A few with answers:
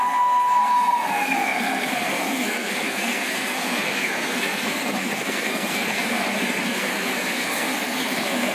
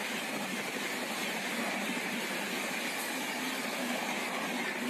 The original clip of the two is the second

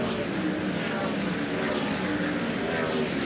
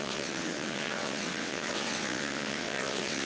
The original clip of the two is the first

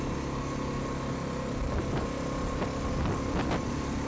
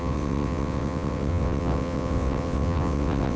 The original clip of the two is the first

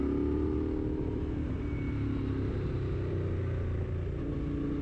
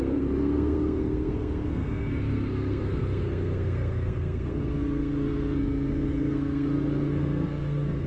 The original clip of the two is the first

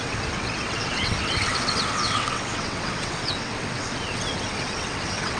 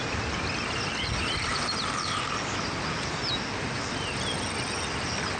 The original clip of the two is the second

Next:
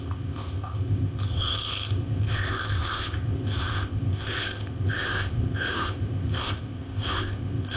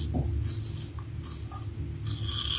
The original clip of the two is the second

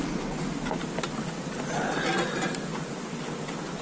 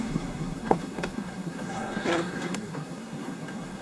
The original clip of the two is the first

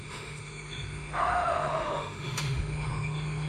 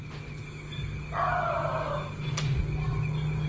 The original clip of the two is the second